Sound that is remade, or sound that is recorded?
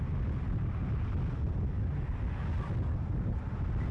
recorded